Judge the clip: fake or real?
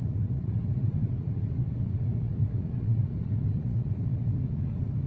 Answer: fake